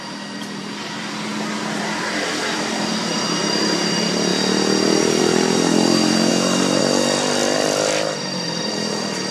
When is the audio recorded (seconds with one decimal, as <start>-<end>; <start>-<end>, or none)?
4.3-5.2; 6.3-6.8

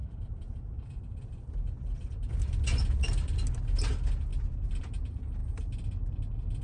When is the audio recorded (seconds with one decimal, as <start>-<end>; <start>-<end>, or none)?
1.2-4.3; 4.8-5.4

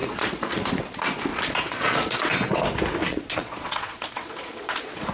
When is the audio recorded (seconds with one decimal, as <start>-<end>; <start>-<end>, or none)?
0.6-1.3; 2.2-3.1